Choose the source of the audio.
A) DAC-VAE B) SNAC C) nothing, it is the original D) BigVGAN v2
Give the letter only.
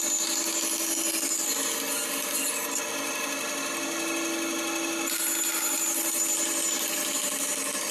C